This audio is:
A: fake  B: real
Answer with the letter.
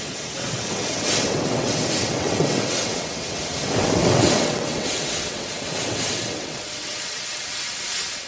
A